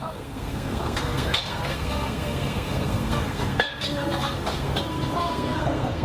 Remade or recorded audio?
remade